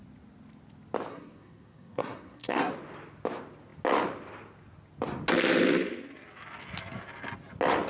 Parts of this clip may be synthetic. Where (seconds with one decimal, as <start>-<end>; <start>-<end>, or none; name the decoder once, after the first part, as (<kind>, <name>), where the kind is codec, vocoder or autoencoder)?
1.1-2.7 (codec, SNAC)